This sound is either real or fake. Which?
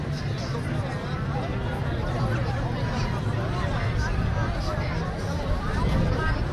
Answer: real